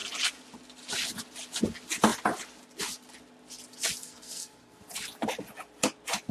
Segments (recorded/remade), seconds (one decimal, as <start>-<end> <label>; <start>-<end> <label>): 0.0-4.0 recorded; 4.0-4.8 remade; 4.8-6.3 recorded